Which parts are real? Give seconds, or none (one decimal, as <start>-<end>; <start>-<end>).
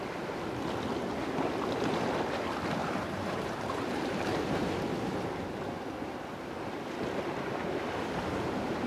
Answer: 0.0-2.8; 4.7-8.9